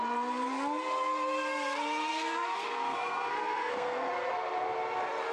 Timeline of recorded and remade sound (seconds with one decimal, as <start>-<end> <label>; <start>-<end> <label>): 0.0-2.1 recorded; 2.1-4.1 remade; 4.1-5.3 recorded